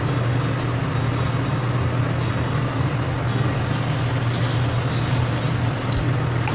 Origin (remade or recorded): recorded